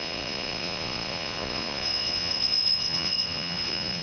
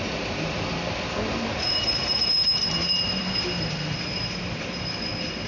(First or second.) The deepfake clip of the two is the first